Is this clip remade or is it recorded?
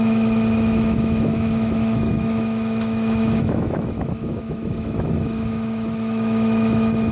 remade